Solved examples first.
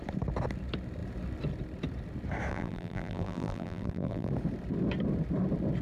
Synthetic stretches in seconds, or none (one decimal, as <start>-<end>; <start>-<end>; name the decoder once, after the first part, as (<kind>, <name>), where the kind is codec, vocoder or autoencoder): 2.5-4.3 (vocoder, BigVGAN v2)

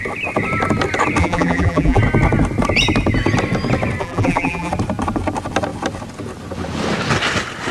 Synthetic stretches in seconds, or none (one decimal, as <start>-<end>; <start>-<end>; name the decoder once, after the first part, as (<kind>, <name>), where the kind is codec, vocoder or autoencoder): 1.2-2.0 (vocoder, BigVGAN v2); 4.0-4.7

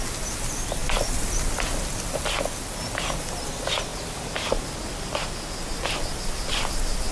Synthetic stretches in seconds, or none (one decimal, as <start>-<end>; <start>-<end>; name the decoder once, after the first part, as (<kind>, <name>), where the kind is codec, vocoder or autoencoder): 0.8-1.5 (vocoder, BigVGAN v2)

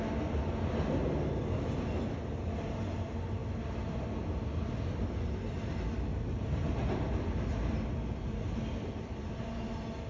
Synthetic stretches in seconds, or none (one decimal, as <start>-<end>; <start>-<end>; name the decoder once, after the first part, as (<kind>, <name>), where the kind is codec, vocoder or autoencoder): none